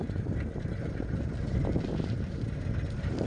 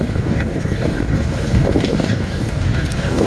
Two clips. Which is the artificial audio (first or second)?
second